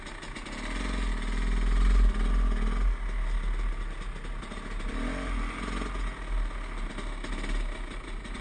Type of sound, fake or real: real